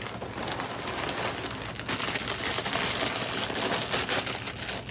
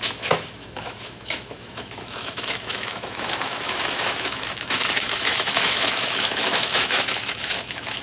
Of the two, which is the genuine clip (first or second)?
first